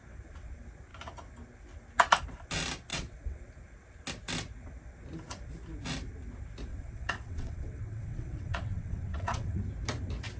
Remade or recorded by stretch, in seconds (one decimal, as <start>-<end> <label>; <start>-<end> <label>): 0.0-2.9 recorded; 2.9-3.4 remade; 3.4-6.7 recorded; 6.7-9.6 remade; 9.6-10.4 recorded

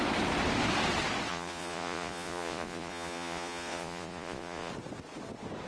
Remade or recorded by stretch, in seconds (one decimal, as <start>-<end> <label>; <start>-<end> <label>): 0.0-1.3 recorded; 1.3-4.7 remade; 4.7-5.7 recorded

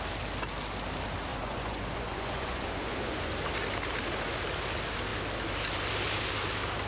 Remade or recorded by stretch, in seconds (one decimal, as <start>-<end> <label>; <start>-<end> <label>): 0.0-1.3 recorded; 1.3-3.3 remade; 3.3-6.9 recorded

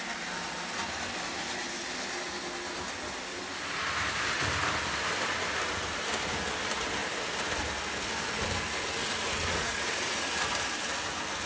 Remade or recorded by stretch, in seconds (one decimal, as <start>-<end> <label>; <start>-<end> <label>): 0.0-9.0 recorded; 9.0-10.5 remade; 10.5-11.5 recorded